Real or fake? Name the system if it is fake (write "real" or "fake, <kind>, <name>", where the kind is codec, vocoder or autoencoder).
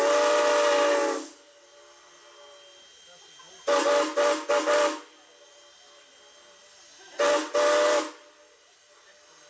real